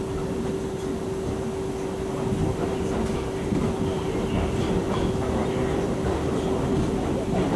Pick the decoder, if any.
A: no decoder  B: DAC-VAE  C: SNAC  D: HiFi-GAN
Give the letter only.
A